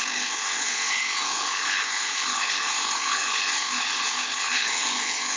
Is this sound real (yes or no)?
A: no